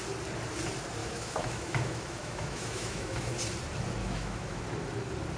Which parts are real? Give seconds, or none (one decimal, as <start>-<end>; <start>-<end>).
0.0-1.0; 3.3-4.0; 4.6-5.4